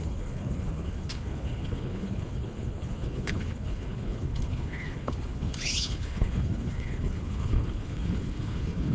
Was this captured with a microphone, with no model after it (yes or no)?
no